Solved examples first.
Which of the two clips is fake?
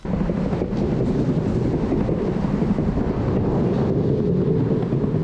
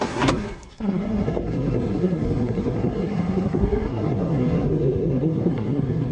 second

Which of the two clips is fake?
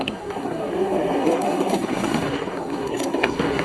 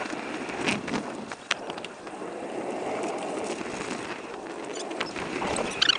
first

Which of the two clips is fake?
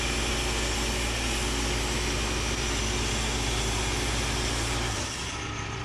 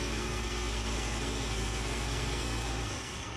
second